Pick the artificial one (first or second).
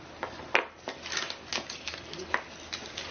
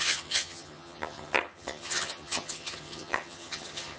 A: second